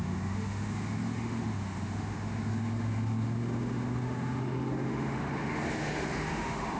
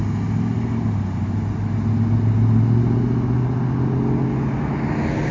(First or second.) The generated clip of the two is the first